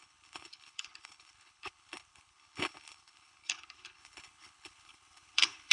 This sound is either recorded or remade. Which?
remade